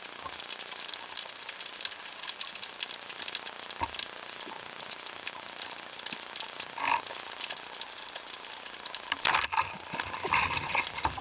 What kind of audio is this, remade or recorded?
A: recorded